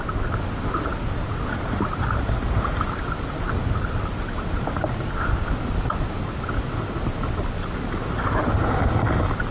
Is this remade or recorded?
recorded